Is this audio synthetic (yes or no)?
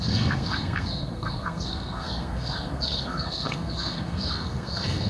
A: yes